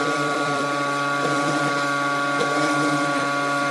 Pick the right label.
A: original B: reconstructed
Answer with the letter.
B